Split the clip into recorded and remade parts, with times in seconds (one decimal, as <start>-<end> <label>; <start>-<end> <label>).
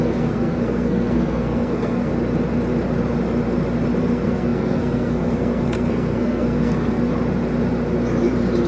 0.0-2.1 remade; 2.1-4.0 recorded; 4.0-7.1 remade; 7.1-8.7 recorded